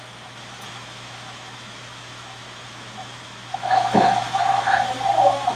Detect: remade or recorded remade